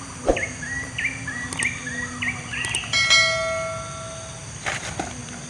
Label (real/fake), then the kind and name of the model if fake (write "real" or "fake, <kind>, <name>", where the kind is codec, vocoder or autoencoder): real